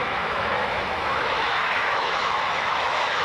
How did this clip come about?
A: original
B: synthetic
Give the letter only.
B